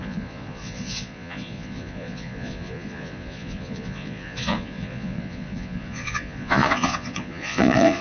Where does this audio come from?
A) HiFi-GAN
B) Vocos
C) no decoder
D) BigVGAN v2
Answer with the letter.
B